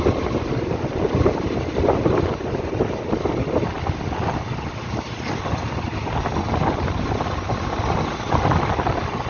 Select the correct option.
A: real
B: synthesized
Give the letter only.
A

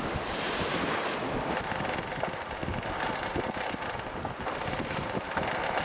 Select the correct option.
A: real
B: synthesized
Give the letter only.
A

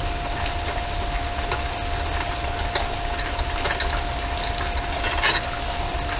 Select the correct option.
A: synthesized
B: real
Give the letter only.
B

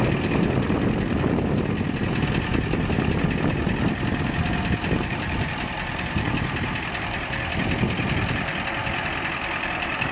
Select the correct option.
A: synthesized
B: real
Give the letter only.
B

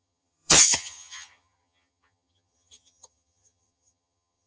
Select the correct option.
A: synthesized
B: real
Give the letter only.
A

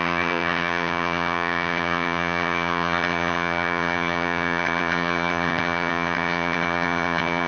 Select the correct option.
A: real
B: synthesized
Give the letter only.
B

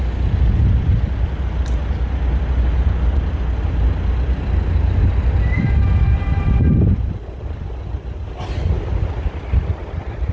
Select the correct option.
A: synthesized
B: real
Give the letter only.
B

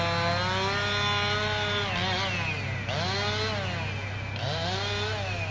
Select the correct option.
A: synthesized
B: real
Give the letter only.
B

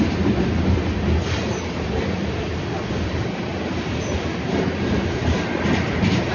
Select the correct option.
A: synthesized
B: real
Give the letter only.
B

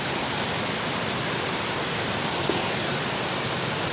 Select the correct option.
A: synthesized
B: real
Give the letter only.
B